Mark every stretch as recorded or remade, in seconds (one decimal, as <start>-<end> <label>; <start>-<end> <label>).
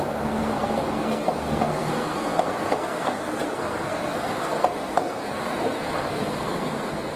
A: 0.0-7.2 remade